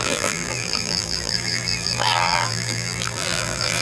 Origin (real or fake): fake